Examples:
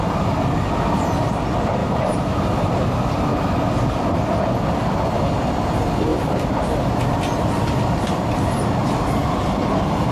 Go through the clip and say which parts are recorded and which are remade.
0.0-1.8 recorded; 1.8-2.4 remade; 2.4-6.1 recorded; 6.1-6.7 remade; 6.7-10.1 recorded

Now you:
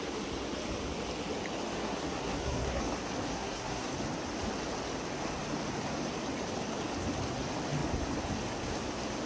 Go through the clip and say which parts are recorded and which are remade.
0.0-1.8 recorded; 1.8-2.8 remade; 2.8-3.3 recorded; 3.3-3.9 remade; 3.9-9.3 recorded